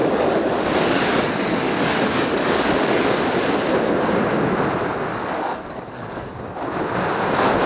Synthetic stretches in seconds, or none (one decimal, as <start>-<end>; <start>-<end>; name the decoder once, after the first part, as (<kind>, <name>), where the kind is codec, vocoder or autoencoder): 0.0-3.6 (codec, DAC); 5.1-6.3